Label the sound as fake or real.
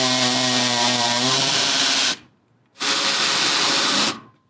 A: real